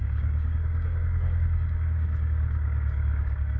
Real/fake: fake